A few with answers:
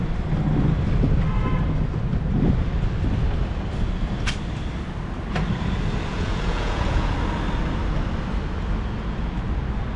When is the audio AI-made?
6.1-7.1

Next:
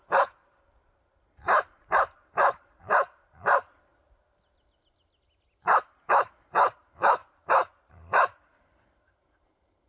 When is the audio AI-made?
0.0-3.9; 5.8-9.9

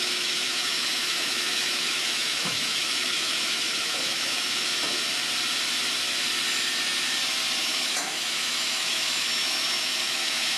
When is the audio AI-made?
0.0-4.7; 7.6-10.6

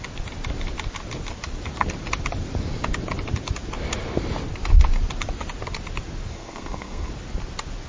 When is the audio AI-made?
6.3-7.1